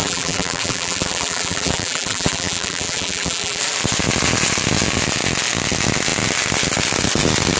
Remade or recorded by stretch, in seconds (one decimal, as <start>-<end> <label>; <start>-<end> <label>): 0.0-3.6 remade; 3.6-7.6 recorded